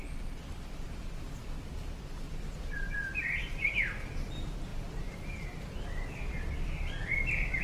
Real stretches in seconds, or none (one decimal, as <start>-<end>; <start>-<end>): none